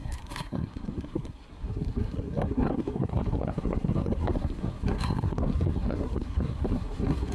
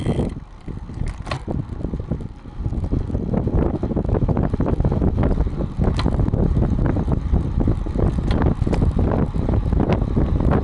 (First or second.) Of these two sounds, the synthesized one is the first